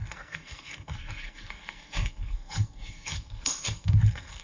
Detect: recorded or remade remade